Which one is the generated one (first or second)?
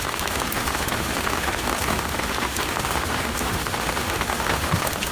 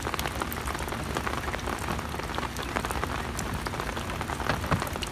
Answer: first